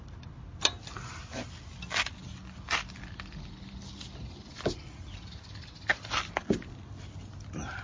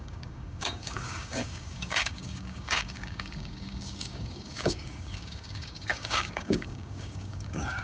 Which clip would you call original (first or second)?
first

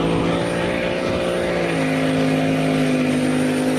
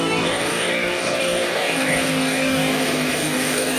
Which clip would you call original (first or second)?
first